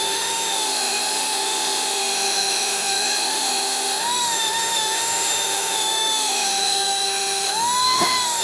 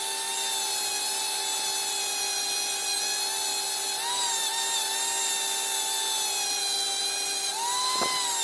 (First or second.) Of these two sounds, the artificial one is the first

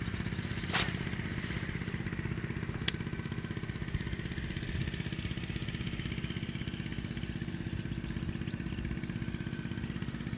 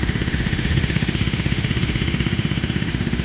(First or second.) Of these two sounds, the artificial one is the second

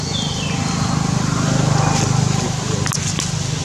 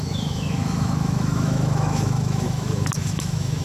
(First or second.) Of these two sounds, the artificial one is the second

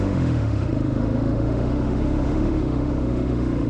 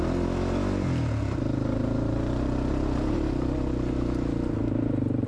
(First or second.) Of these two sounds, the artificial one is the first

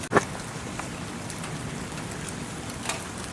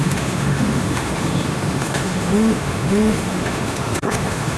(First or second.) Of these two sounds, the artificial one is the second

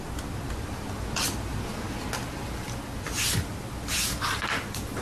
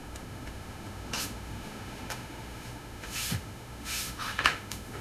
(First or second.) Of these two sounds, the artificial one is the second